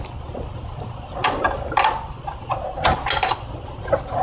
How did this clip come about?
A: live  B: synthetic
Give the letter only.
A